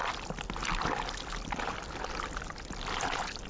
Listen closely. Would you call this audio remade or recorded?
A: recorded